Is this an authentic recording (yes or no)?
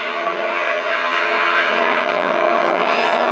no